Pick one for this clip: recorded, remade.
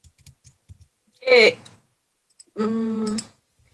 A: remade